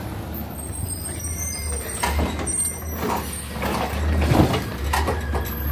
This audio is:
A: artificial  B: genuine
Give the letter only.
B